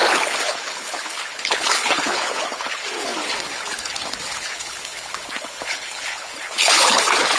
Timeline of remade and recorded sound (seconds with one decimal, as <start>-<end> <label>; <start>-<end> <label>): 0.0-7.4 remade